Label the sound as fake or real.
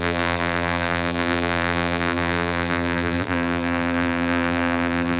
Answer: fake